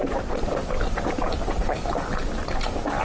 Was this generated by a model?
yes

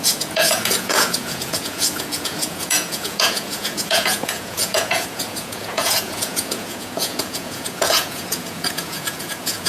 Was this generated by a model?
yes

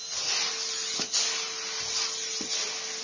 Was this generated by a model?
no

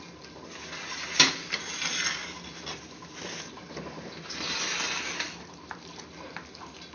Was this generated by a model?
no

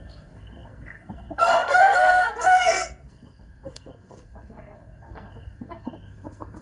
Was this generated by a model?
yes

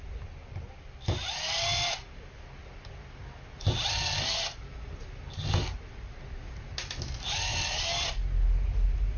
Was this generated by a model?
no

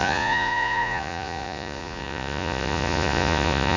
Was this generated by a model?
yes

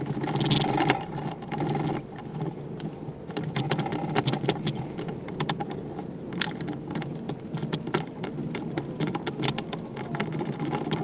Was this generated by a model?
no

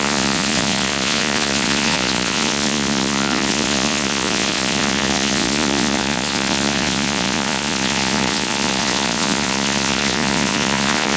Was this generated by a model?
yes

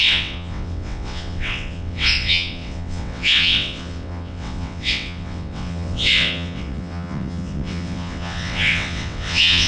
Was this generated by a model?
yes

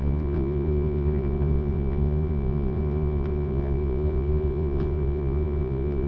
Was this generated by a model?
yes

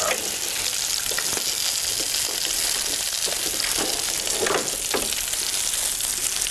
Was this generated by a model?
no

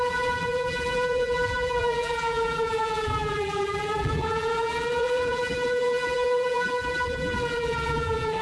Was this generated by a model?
yes